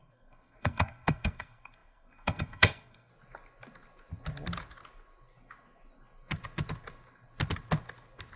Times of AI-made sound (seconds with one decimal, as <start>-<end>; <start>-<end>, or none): 0.0-3.1